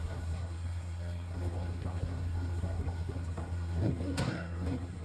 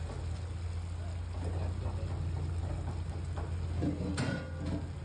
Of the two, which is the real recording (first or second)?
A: second